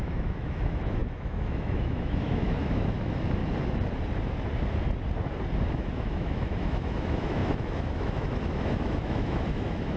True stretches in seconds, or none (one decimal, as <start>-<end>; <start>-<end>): 3.4-5.6